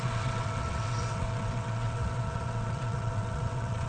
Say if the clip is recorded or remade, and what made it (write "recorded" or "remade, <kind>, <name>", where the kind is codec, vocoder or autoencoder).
remade, vocoder, WaveNeXt